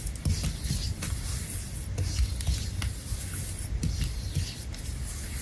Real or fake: real